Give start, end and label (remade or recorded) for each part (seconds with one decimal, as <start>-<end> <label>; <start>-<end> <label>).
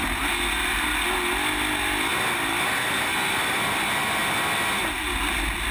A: 0.0-5.7 recorded